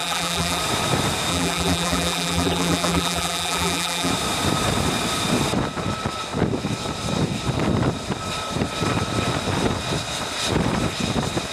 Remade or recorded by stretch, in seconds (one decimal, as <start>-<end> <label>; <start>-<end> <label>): 0.0-0.6 remade; 0.6-1.3 recorded; 1.3-4.1 remade; 4.1-11.5 recorded